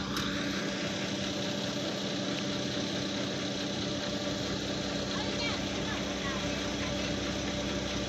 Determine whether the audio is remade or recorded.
recorded